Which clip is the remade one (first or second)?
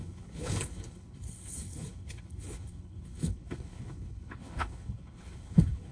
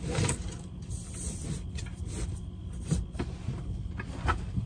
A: first